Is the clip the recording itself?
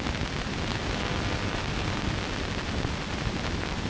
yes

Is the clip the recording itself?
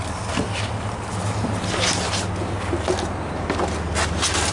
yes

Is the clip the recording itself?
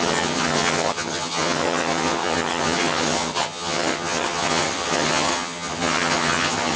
no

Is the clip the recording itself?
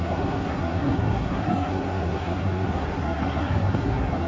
no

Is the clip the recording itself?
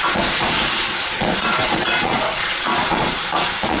no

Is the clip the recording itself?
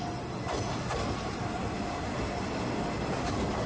yes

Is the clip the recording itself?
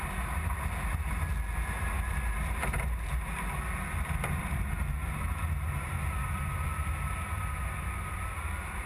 yes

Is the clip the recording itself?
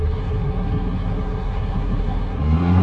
no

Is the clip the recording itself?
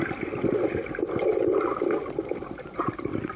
yes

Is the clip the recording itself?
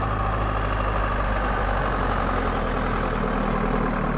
yes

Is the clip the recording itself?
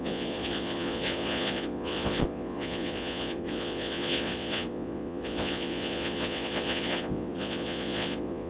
no